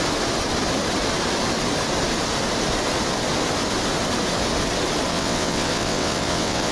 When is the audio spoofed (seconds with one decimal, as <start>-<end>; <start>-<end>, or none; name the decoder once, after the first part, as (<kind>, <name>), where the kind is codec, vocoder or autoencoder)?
5.1-6.7 (vocoder, WaveNeXt)